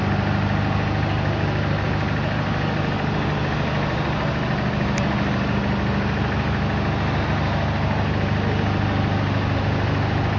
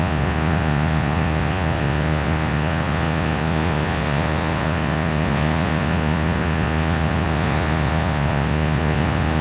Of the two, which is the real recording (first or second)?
first